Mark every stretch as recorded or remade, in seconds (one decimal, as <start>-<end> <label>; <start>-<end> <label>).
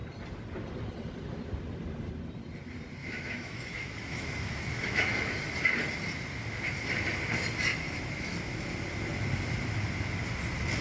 0.0-3.0 recorded; 3.0-5.3 remade; 5.3-7.7 recorded; 7.7-8.7 remade; 8.7-10.8 recorded